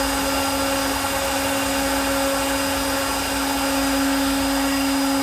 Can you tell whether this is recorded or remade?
recorded